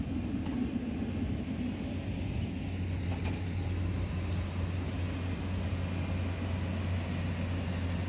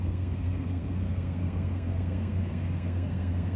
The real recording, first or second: first